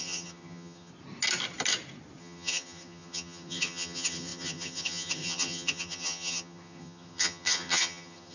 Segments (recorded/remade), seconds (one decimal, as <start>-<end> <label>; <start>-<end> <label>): 0.0-0.9 remade; 0.9-2.2 recorded; 2.2-8.3 remade